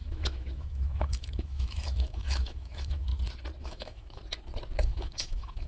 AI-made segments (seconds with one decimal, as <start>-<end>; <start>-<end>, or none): 0.0-3.1; 3.6-4.2; 4.8-5.7